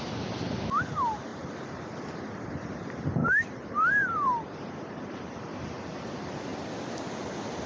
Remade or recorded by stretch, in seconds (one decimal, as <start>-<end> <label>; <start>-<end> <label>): 0.0-1.3 recorded; 1.3-2.2 remade; 2.2-3.2 recorded; 3.2-6.1 remade; 6.1-7.7 recorded